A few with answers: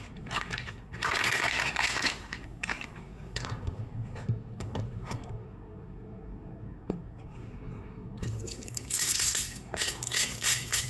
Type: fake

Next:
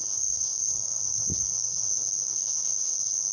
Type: fake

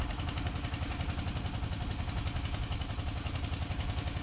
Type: real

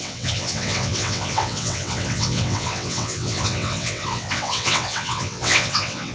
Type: fake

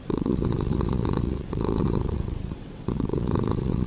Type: fake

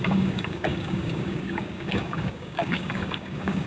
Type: fake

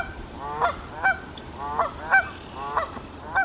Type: real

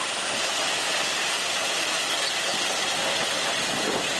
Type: real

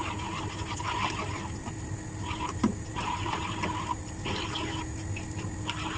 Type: real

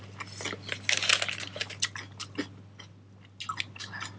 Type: real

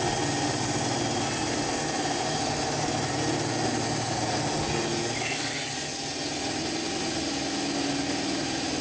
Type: real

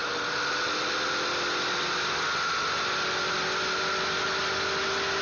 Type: real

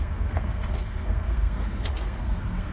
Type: fake